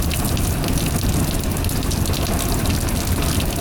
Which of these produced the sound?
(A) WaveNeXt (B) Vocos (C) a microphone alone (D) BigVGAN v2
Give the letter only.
C